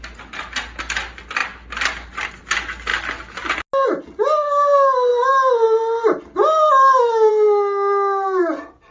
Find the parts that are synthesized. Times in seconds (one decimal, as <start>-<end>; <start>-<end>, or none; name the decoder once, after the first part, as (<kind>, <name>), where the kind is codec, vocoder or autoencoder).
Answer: none